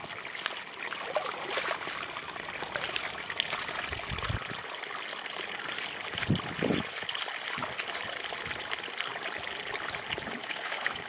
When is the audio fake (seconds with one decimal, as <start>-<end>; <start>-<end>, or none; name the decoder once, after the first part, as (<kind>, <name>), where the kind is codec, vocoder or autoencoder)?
10.4-11.1 (autoencoder, DAC-VAE)